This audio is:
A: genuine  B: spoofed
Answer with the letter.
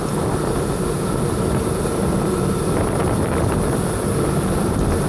A